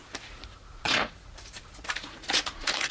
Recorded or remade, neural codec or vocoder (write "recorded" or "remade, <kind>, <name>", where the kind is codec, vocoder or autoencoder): remade, vocoder, Vocos